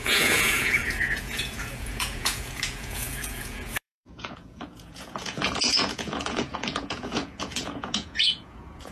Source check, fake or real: fake